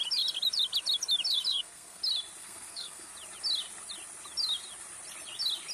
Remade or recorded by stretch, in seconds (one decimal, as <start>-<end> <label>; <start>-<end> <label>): 0.0-1.5 recorded; 1.5-2.0 remade; 2.0-2.4 recorded; 2.4-3.1 remade; 3.1-5.7 recorded